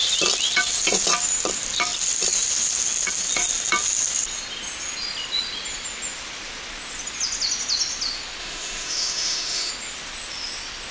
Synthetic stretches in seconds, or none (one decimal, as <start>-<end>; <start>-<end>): 8.4-9.7